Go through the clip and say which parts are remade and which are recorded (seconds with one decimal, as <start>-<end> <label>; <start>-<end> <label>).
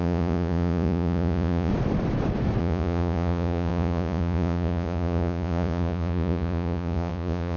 0.0-1.7 remade; 1.7-2.6 recorded; 2.6-7.6 remade